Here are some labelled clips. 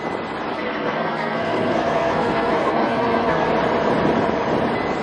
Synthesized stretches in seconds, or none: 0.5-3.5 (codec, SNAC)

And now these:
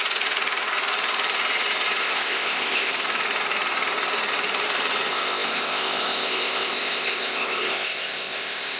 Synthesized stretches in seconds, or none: 2.0-2.9 (codec, ZipCodec); 5.1-8.8